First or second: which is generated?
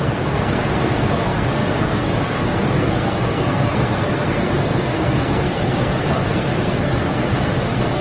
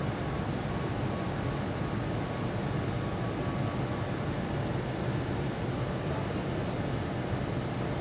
first